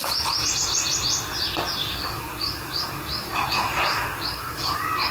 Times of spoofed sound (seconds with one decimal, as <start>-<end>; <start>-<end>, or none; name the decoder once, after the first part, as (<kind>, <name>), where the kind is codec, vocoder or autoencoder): 1.8-5.1 (codec, DAC)